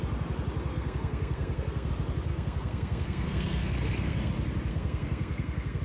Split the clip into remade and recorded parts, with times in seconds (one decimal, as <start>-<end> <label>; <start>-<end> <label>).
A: 0.0-0.7 recorded; 0.7-1.9 remade; 1.9-2.3 recorded; 2.3-4.3 remade; 4.3-4.7 recorded; 4.7-5.8 remade